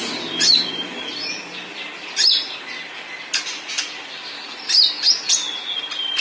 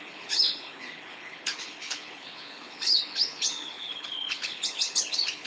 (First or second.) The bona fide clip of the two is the first